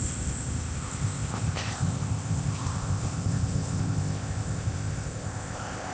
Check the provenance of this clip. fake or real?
fake